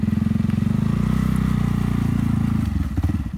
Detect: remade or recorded recorded